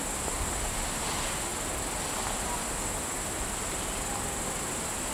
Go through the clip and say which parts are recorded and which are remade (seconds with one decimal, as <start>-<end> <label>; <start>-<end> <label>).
0.0-5.1 recorded